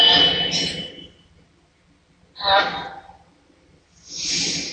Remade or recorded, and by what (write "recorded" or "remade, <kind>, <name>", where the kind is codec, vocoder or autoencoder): recorded